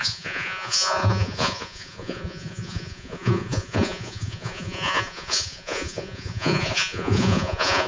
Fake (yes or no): yes